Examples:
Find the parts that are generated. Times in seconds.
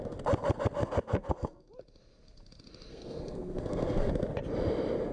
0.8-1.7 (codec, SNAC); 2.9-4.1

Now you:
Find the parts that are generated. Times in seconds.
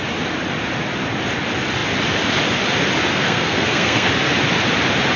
3.1-4.1 (codec, SNAC)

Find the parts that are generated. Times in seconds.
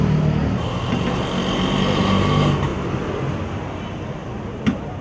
none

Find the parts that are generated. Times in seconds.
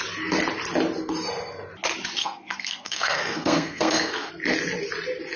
2.2-4.3 (codec, SNAC)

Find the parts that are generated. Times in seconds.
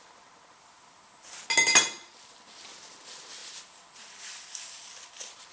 none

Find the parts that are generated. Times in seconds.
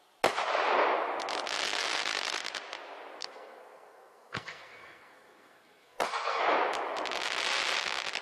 3.2-6.4 (codec, SNAC)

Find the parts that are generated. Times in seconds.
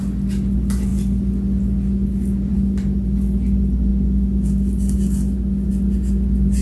none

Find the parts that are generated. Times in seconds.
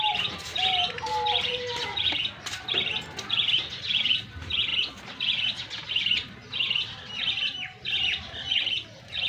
none